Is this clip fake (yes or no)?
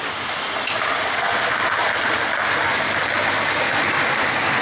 no